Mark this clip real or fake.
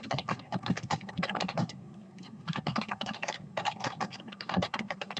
fake